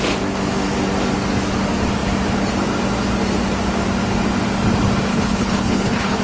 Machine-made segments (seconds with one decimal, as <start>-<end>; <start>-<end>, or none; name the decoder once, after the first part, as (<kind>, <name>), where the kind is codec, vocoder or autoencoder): 5.1-6.2 (codec, HILCodec)